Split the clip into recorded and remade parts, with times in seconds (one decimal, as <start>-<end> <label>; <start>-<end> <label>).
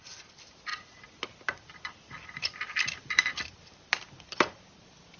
0.0-5.2 remade